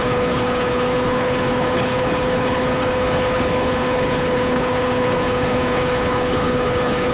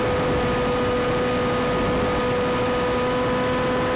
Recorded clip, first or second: second